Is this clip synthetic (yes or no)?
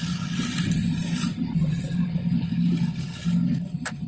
no